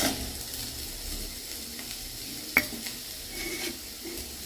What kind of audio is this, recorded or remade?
recorded